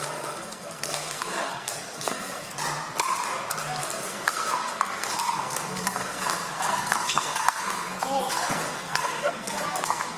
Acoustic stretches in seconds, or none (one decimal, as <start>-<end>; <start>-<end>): 2.5-3.8